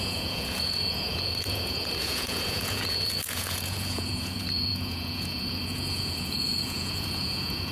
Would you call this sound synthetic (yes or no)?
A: yes